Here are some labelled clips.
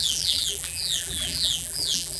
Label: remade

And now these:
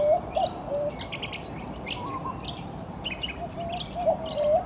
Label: remade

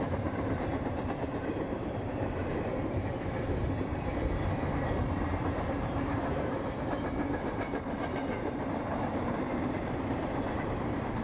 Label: remade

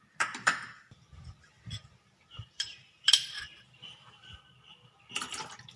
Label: remade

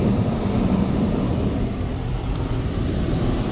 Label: remade